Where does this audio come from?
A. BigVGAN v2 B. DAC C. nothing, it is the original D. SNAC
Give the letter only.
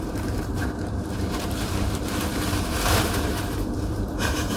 A